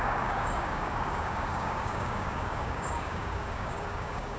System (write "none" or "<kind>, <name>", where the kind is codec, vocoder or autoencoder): codec, DAC